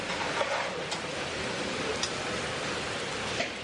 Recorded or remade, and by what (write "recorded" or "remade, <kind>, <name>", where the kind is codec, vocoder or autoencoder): remade, vocoder, BigVGAN v2